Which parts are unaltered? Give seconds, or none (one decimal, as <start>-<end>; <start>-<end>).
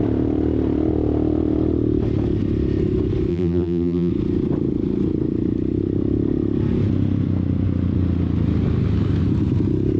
0.0-3.3; 4.1-10.0